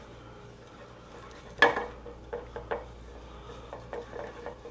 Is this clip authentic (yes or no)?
yes